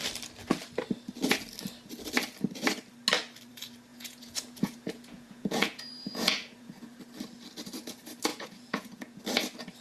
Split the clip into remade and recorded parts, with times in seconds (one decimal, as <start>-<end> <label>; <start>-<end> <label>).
0.0-3.9 recorded; 3.9-7.0 remade; 7.0-8.3 recorded; 8.3-9.2 remade; 9.2-9.8 recorded